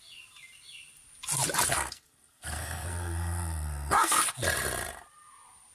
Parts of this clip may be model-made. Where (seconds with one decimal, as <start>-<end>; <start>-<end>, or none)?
1.7-4.2

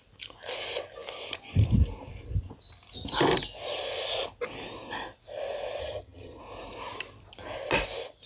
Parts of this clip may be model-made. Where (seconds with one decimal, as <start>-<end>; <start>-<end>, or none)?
5.8-6.4

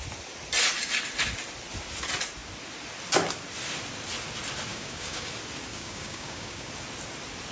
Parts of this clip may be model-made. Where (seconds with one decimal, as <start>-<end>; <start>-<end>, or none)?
4.7-5.3; 5.7-6.7

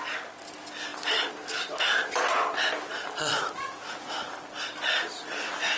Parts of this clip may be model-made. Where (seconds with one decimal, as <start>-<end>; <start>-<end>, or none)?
none

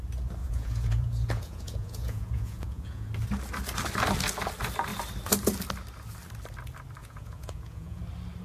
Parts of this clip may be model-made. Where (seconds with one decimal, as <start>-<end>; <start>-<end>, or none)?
0.4-3.1; 7.0-8.0

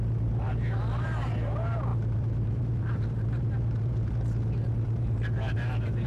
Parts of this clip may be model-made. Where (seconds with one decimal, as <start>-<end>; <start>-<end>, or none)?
0.0-6.1